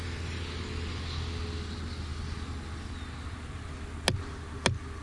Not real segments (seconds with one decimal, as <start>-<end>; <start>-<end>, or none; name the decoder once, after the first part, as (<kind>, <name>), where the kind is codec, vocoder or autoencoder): none